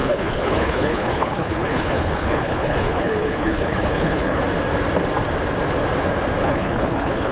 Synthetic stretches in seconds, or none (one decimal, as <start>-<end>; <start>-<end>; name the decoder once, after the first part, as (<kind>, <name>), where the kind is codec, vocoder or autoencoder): 0.0-4.4 (codec, HILCodec); 6.4-7.3